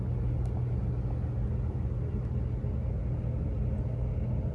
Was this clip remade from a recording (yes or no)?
no